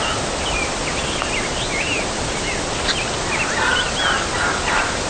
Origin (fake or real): real